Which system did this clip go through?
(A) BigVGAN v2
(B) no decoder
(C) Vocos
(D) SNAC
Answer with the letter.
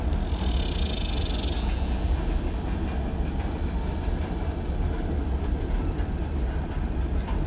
B